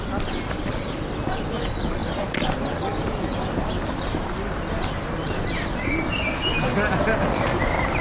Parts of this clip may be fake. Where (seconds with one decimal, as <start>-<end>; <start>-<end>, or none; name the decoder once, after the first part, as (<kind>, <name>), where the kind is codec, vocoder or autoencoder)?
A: none